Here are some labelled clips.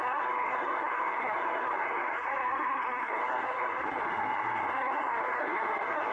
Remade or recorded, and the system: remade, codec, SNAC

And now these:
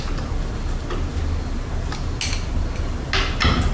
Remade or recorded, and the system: recorded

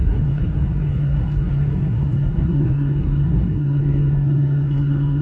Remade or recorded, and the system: remade, codec, SNAC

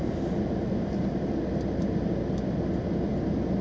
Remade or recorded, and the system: recorded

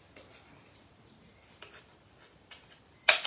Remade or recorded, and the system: recorded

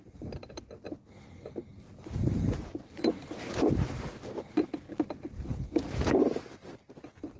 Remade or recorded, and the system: recorded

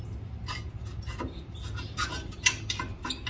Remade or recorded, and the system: recorded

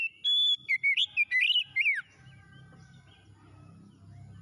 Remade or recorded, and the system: recorded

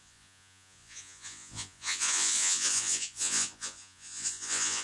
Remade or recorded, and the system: remade, vocoder, Vocos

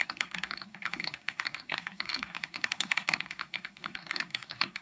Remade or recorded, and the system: remade, codec, SNAC